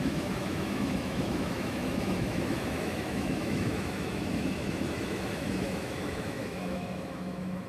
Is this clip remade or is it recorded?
remade